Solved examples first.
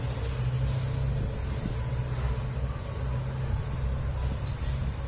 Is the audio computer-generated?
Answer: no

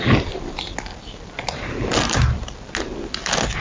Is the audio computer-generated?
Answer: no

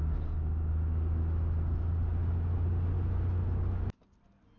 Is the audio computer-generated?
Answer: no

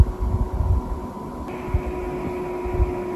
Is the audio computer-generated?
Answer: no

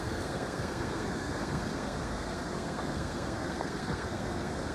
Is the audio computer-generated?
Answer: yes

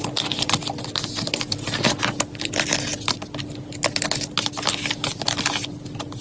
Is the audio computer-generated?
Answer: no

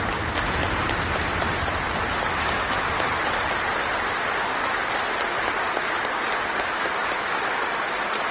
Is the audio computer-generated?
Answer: no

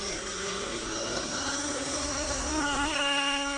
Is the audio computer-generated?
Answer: yes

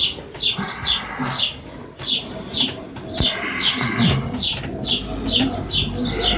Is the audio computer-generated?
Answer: no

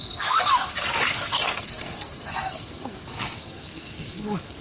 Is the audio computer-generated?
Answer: yes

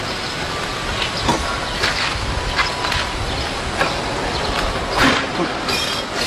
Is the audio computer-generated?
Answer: no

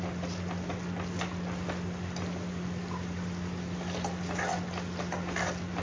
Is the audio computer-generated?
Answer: no